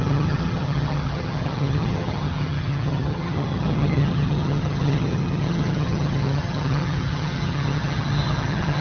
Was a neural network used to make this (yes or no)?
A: yes